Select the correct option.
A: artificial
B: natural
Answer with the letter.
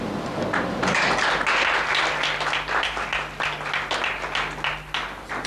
B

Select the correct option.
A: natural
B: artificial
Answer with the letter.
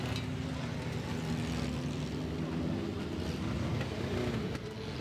A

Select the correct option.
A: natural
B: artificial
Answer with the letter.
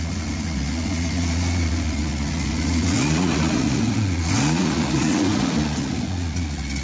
B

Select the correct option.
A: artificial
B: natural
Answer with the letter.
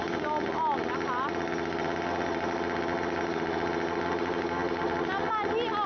B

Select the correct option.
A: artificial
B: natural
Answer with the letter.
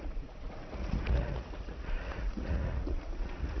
A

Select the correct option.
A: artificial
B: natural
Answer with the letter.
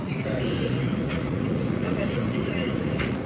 A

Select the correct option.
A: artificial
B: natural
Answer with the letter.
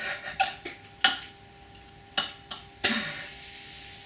B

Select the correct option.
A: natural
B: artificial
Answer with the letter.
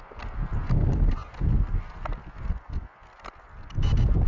A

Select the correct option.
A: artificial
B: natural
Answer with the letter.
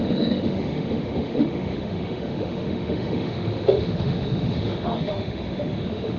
A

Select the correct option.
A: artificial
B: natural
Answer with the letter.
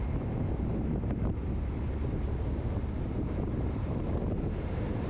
A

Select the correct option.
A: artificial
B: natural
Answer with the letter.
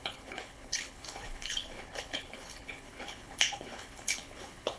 A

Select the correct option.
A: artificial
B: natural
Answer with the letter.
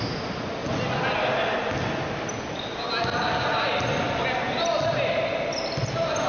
B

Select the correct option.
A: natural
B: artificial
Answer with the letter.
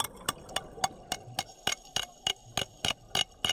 A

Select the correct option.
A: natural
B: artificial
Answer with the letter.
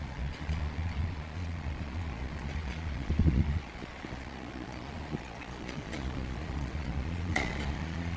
B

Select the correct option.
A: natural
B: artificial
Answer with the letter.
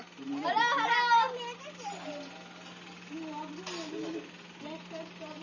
A